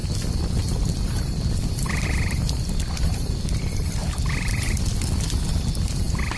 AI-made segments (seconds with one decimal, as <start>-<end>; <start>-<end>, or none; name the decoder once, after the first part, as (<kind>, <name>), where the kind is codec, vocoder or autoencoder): 0.0-4.0 (vocoder, BigVGAN v2); 6.0-6.4